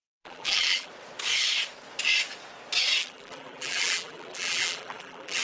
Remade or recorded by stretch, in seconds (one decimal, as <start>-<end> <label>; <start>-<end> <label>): 0.0-0.9 remade; 0.9-3.0 recorded; 3.0-5.4 remade